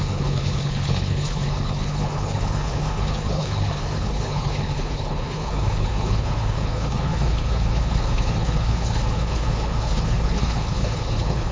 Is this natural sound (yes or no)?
no